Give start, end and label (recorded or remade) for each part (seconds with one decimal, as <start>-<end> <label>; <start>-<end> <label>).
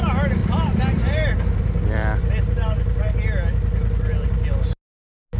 0.0-0.4 recorded; 0.4-2.3 remade; 2.3-5.4 recorded